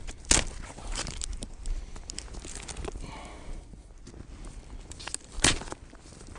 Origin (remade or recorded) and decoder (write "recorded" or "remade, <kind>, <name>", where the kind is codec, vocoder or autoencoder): recorded